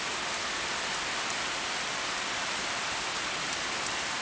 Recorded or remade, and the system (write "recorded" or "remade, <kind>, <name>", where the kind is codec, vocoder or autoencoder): recorded